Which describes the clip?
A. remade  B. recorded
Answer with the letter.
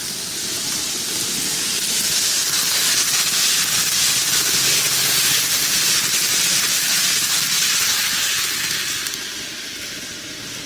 B